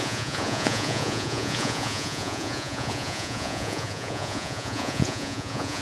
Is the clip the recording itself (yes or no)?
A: no